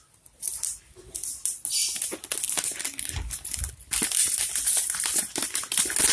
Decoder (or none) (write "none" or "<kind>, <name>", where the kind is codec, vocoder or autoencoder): none